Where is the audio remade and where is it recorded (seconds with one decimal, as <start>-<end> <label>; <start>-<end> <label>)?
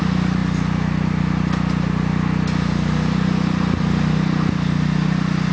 0.0-5.5 recorded